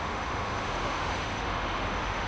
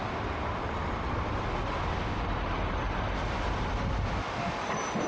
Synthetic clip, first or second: first